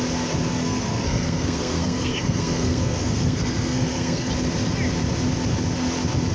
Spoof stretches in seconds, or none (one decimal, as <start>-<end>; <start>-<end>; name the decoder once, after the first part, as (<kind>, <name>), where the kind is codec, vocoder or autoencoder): 0.5-4.3 (codec, SNAC)